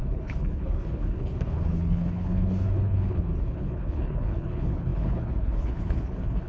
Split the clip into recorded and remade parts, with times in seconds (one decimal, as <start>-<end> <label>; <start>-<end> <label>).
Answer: 0.0-6.5 remade

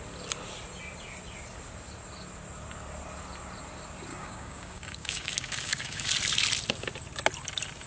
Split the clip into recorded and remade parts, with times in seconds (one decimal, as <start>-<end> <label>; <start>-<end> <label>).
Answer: 0.0-4.1 recorded; 4.1-6.1 remade; 6.1-7.9 recorded

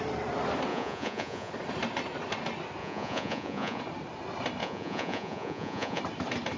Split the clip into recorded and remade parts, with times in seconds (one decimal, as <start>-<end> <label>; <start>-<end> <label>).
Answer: 0.0-0.7 recorded; 0.7-1.5 remade; 1.5-2.8 recorded; 2.8-3.8 remade; 3.8-4.6 recorded; 4.6-6.0 remade; 6.0-6.6 recorded

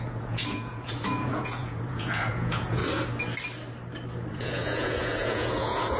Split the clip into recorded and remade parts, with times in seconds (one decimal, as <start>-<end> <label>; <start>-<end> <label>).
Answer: 0.0-2.8 remade; 2.8-4.3 recorded; 4.3-6.0 remade